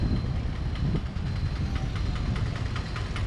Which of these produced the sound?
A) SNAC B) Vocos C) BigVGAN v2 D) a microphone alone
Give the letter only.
D